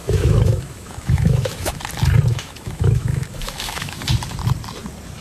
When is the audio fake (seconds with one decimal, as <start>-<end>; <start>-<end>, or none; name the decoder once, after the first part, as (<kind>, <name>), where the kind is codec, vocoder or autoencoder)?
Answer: 0.0-1.8 (autoencoder, DAC-VAE); 2.3-4.0